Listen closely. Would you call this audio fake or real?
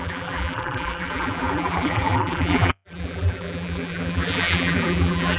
fake